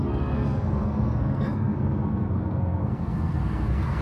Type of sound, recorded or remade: remade